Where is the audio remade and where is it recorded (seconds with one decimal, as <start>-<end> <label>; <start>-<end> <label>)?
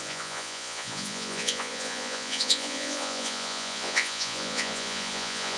0.0-5.6 remade